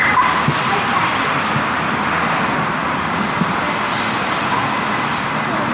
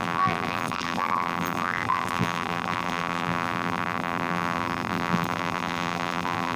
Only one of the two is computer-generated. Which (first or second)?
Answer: second